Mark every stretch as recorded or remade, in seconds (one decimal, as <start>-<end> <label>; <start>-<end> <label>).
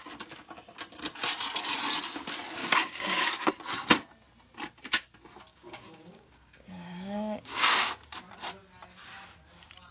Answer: 0.0-2.6 recorded; 2.6-3.5 remade; 3.5-5.5 recorded; 5.5-7.9 remade; 7.9-9.9 recorded